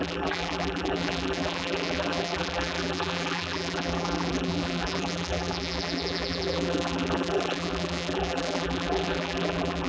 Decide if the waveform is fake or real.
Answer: fake